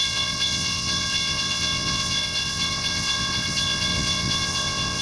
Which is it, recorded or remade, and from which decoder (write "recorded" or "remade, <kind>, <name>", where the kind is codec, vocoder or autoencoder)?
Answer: remade, vocoder, WaveNeXt